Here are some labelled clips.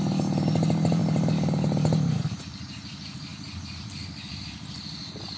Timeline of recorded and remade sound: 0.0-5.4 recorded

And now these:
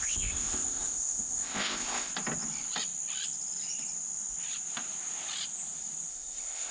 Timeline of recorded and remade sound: 0.0-2.1 remade; 2.1-6.1 recorded; 6.1-6.7 remade

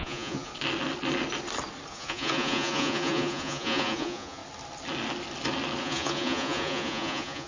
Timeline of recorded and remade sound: 0.0-0.5 remade; 0.5-1.9 recorded; 1.9-4.4 remade; 4.4-5.8 recorded; 5.8-7.5 remade

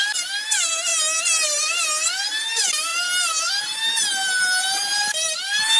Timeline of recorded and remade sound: 0.0-2.9 remade; 2.9-3.5 recorded; 3.5-5.8 remade